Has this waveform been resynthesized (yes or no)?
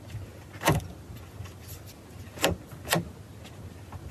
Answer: no